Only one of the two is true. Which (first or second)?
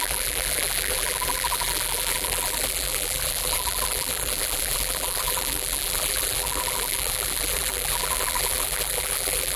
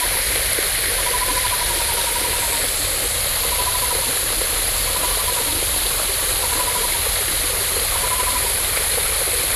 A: second